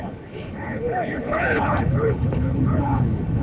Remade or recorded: remade